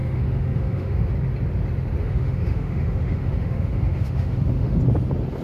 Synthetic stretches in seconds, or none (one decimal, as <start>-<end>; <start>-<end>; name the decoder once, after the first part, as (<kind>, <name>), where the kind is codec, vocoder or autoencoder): 0.0-1.1 (autoencoder, DAC-VAE); 2.0-4.8